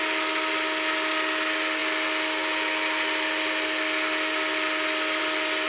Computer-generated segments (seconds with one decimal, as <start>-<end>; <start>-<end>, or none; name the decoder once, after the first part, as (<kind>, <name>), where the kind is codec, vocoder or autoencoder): none